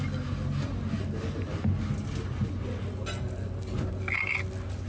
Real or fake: real